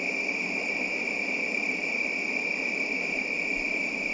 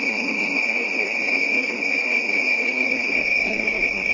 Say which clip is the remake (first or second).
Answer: second